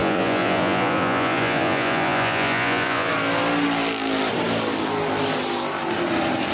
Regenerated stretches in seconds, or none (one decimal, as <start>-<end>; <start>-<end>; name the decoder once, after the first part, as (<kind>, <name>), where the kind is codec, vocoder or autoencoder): 0.0-3.1 (vocoder, Vocos)